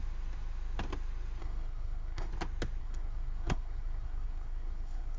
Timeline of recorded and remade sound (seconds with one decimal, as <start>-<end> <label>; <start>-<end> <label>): 0.0-1.4 recorded; 1.4-2.3 remade; 2.3-2.8 recorded; 2.8-5.2 remade

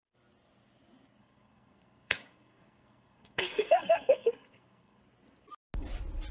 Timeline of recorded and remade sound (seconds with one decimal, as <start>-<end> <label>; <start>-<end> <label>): 0.0-1.2 recorded; 1.2-5.0 remade; 5.0-6.3 recorded

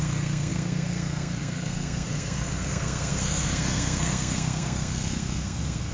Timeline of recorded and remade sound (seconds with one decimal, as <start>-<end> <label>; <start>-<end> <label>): 0.0-5.9 remade

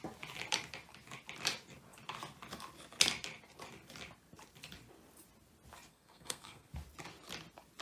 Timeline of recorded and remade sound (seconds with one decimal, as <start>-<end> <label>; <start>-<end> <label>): 0.0-5.9 recorded; 5.9-6.7 remade; 6.7-7.8 recorded

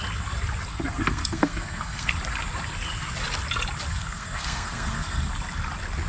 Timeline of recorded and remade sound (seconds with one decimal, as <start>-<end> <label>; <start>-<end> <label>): 0.0-0.7 recorded; 0.7-2.1 remade; 2.1-3.9 recorded; 3.9-5.3 remade; 5.3-6.1 recorded